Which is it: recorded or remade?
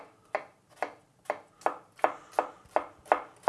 recorded